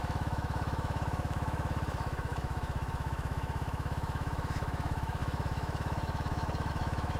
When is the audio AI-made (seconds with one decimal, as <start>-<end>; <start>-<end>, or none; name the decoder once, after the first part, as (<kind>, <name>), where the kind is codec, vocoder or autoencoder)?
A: 0.0-7.2 (autoencoder, DAC-VAE)